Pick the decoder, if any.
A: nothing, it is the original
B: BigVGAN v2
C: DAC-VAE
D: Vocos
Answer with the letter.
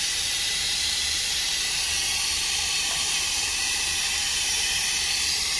B